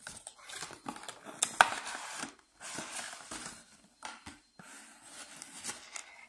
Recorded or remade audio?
recorded